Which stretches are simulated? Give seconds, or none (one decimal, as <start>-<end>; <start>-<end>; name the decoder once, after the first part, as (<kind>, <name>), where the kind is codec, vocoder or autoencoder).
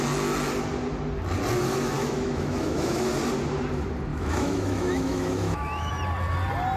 2.0-3.1 (autoencoder, DAC-VAE); 4.1-5.9